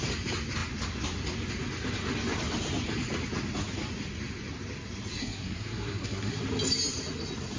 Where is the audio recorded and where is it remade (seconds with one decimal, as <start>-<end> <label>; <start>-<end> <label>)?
0.0-5.2 recorded; 5.2-6.4 remade; 6.4-7.6 recorded